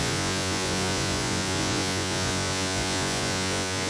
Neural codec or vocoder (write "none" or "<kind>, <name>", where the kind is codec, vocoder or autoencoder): vocoder, Vocos